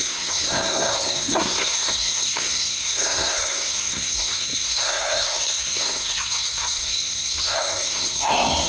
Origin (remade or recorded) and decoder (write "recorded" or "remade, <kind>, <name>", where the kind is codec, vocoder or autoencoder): remade, codec, SNAC